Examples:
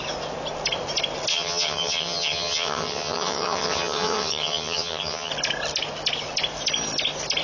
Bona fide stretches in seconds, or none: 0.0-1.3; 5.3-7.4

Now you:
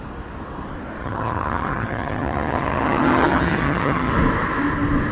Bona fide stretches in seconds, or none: 0.0-1.0; 4.1-5.1

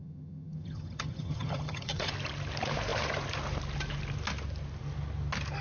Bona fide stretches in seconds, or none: 2.1-5.6

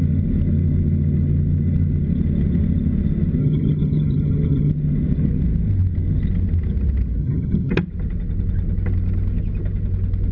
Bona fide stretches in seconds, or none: 0.0-3.4; 4.7-7.2; 7.7-10.3

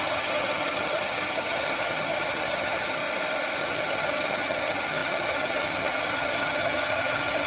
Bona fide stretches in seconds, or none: 3.0-3.6

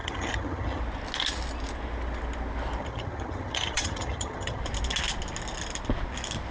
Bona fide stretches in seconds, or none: 0.8-2.8; 4.6-6.5

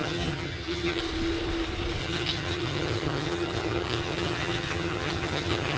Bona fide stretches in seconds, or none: 1.0-2.0